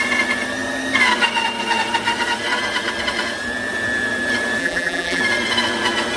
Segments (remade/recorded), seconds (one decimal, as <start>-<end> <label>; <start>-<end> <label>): 0.0-4.6 recorded; 4.6-5.2 remade; 5.2-6.2 recorded